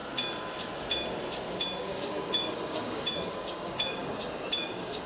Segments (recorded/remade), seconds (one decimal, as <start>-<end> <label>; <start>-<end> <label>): 0.0-1.8 recorded; 1.8-5.1 remade